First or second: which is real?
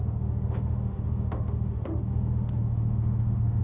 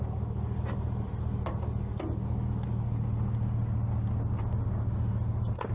second